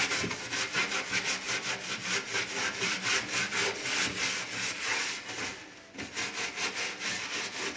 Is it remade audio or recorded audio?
recorded